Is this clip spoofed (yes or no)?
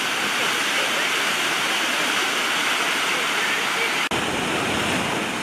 no